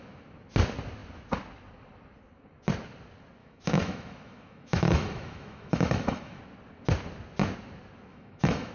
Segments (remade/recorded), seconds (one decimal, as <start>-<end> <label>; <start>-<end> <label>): 0.0-3.4 recorded; 3.4-6.4 remade; 6.4-8.1 recorded; 8.1-8.7 remade